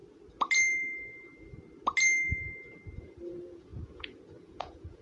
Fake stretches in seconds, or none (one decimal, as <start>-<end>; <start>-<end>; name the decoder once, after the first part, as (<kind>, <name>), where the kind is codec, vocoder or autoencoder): 3.0-5.0 (vocoder, Vocos)